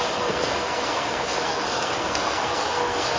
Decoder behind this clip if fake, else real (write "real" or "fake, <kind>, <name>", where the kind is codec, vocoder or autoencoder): fake, codec, SNAC